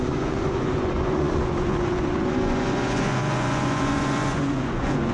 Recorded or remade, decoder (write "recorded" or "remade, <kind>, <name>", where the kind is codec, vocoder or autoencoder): remade, vocoder, Vocos